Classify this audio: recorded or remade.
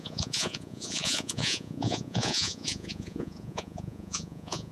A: remade